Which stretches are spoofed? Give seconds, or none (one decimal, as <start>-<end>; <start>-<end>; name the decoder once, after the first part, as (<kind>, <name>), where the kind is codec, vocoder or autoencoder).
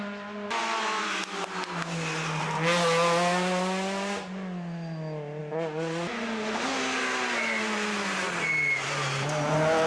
none